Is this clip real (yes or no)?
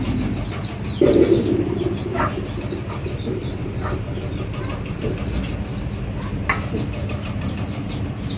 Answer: yes